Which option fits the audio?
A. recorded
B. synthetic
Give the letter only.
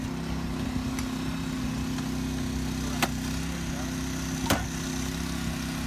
A